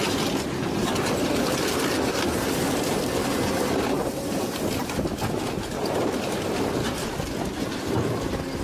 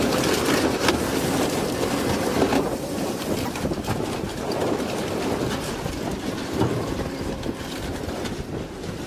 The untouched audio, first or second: first